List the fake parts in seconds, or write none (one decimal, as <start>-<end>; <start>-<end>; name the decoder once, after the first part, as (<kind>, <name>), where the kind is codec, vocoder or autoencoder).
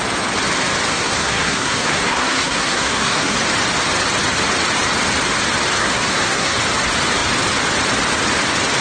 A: 0.9-3.4 (codec, SNAC); 5.8-6.6